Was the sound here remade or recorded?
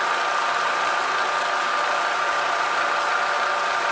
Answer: recorded